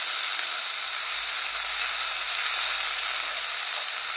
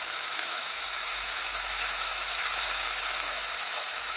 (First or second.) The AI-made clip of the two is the second